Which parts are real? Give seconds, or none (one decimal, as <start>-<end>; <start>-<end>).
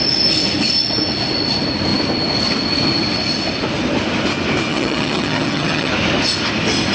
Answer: 0.0-4.7; 5.9-6.9